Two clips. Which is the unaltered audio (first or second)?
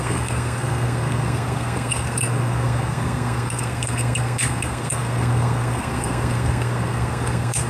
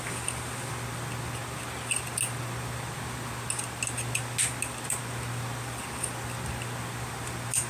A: second